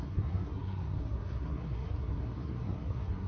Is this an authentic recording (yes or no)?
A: no